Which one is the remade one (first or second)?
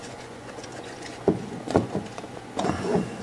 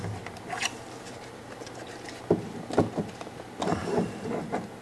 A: first